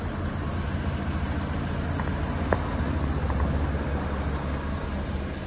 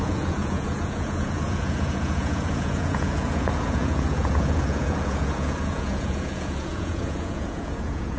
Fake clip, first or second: second